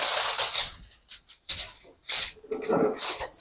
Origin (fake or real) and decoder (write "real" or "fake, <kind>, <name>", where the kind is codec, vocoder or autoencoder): real